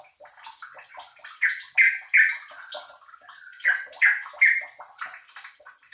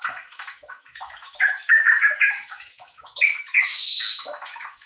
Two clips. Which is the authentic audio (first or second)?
first